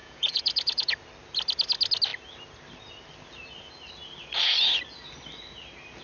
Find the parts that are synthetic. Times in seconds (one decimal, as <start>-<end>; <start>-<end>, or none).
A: 0.0-0.9